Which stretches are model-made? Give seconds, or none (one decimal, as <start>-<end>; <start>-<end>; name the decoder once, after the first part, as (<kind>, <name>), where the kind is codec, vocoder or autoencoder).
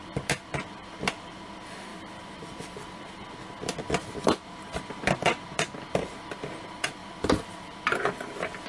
1.9-3.0 (vocoder, BigVGAN v2); 7.0-8.0